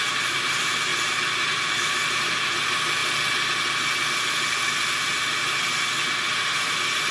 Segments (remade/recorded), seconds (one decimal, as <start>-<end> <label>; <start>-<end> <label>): 0.0-3.0 remade; 3.0-6.3 recorded; 6.3-7.1 remade